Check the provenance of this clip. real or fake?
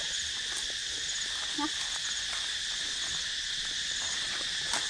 real